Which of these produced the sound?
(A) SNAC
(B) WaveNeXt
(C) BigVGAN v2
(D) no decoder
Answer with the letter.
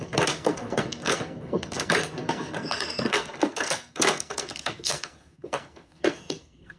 A